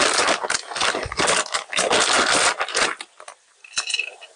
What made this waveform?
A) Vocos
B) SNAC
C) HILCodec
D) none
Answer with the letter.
D